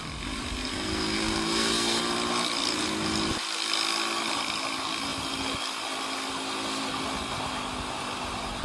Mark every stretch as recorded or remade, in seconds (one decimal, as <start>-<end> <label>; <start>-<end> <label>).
0.0-0.7 recorded; 0.7-2.0 remade; 2.0-8.6 recorded